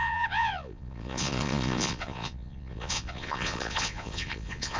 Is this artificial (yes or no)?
yes